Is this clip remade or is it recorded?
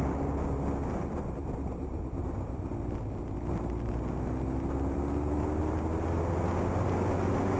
recorded